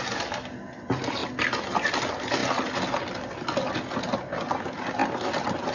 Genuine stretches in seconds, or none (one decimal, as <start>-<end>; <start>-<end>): 0.0-5.7